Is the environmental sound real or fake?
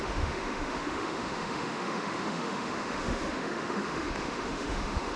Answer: fake